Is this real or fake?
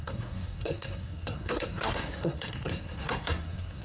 fake